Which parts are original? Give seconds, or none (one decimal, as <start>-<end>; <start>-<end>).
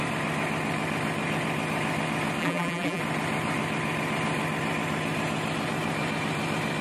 0.0-2.4; 3.0-6.8